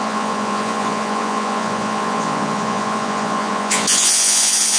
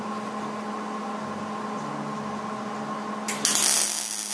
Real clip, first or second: second